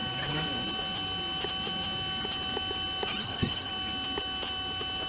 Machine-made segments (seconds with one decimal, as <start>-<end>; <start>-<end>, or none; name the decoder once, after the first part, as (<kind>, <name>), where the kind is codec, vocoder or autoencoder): 3.2-3.7 (codec, SNAC)